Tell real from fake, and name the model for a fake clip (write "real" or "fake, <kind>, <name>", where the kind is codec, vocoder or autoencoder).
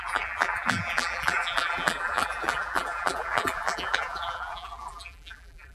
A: fake, vocoder, BigVGAN v2